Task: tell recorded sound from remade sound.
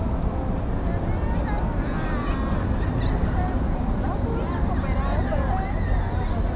recorded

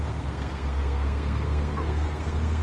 remade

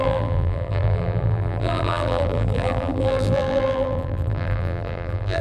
remade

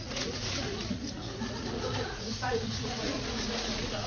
remade